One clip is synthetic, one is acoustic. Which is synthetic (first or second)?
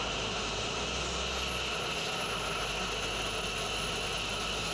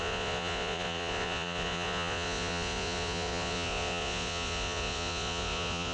second